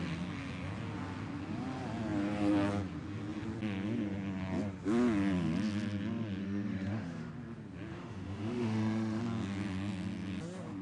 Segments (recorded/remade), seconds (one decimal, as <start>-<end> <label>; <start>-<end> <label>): 0.0-6.4 recorded; 6.4-7.3 remade; 7.3-7.9 recorded; 7.9-9.2 remade; 9.2-10.8 recorded